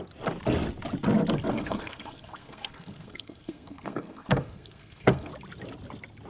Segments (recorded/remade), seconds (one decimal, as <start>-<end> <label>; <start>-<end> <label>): 0.0-1.5 recorded; 1.5-5.3 remade; 5.3-6.3 recorded